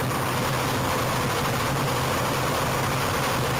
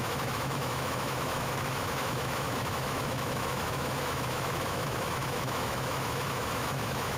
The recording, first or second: first